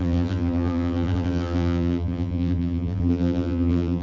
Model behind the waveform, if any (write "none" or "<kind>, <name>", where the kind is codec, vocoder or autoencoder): vocoder, BigVGAN v2